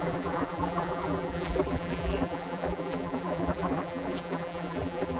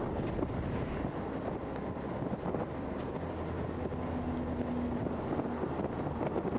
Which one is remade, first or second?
first